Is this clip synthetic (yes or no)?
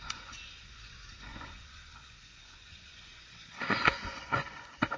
yes